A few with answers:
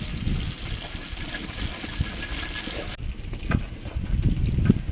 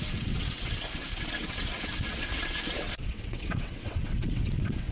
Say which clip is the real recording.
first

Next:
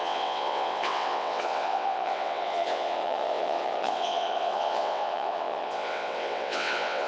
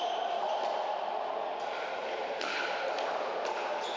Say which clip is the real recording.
second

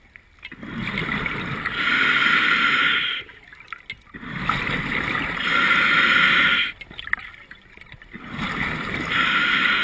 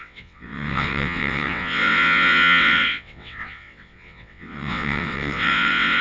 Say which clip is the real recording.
first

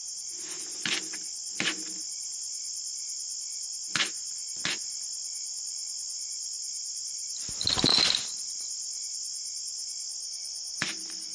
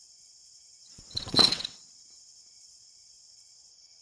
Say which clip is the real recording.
first